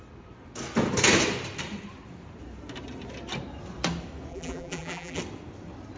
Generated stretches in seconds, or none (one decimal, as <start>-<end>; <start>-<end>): 4.3-5.2